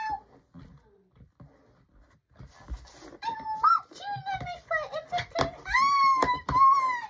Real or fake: real